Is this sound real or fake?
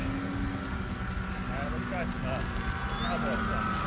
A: real